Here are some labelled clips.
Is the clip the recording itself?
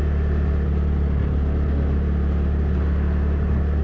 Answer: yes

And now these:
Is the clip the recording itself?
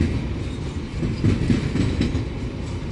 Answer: yes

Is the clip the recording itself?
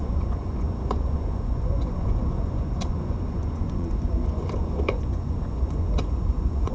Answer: no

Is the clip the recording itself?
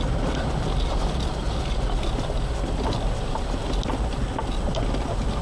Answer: yes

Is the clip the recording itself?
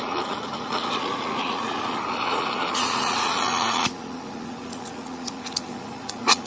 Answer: no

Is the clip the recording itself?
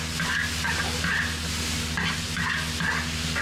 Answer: yes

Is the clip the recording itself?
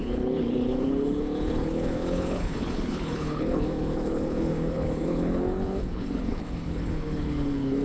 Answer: no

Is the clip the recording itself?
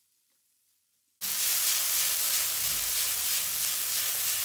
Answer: yes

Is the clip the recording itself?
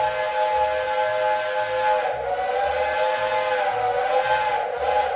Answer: yes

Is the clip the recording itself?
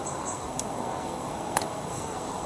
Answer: no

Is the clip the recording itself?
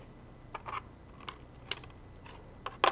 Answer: yes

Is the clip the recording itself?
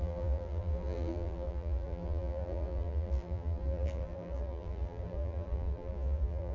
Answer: no